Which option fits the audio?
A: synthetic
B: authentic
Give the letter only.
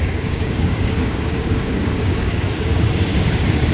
A